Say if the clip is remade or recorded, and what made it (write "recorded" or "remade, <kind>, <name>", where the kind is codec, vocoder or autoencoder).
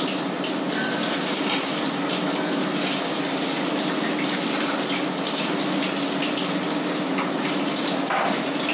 recorded